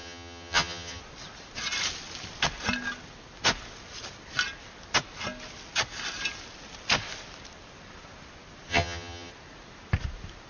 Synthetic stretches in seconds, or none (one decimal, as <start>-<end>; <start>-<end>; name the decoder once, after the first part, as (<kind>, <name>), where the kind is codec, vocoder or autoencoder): 0.0-1.0 (vocoder, HiFi-GAN); 8.7-9.3